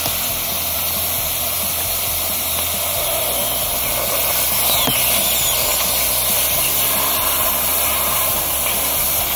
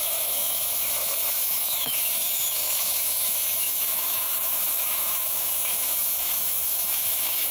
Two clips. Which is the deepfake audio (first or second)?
second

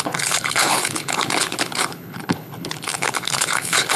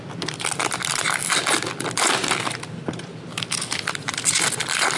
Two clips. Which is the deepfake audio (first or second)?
first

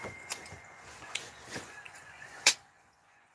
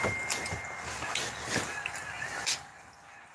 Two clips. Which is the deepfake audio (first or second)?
first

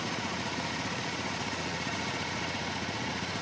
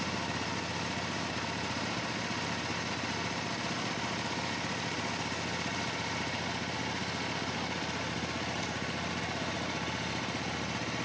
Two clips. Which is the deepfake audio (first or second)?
first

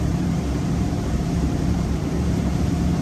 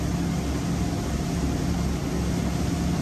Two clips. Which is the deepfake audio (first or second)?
first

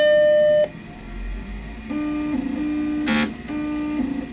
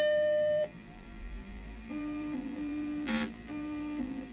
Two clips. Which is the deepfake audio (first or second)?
second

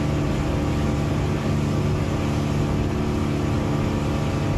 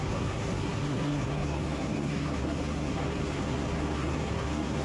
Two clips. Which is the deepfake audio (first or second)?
second